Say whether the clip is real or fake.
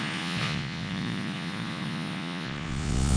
fake